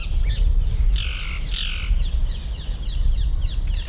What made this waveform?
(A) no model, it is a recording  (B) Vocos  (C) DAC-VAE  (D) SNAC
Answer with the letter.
A